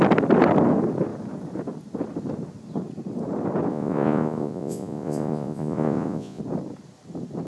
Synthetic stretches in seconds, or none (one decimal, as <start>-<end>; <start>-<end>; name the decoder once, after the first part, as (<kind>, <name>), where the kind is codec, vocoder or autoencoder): 3.7-6.4 (vocoder, Vocos)